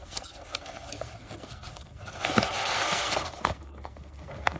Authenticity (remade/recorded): remade